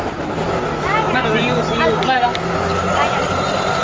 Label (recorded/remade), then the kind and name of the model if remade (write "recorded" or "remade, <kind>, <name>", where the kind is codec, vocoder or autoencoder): recorded